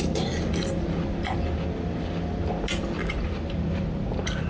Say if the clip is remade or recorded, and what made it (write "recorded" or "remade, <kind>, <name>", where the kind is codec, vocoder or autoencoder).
recorded